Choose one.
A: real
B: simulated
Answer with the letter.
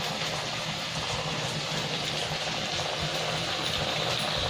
A